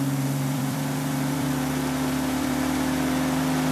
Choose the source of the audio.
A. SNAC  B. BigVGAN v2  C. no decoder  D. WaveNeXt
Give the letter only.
B